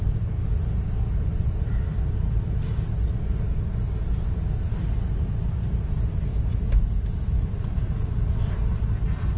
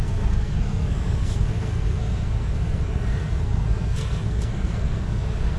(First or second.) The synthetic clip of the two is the second